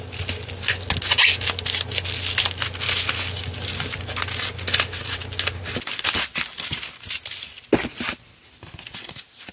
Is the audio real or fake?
real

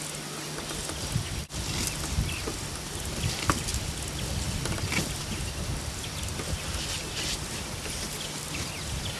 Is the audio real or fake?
real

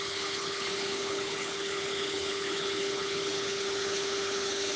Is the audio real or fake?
fake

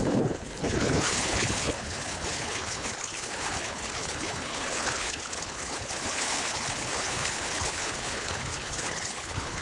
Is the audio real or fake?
fake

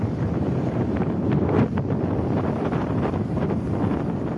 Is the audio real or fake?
real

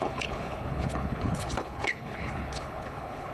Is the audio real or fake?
fake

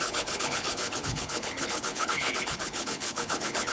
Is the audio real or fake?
fake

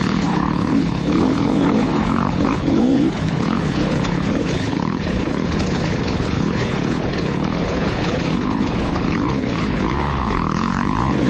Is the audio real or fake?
fake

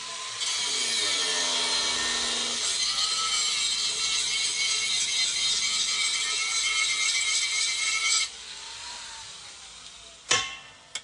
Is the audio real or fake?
real